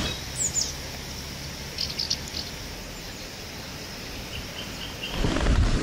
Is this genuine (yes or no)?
yes